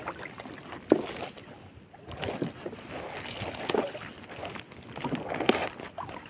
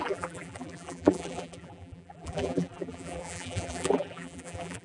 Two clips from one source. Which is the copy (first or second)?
second